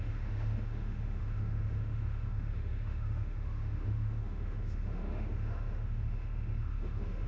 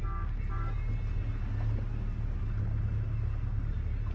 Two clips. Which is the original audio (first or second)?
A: second